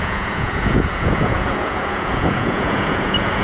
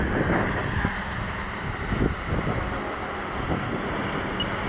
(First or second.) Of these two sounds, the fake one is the first